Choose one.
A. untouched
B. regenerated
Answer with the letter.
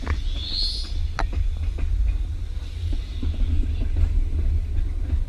A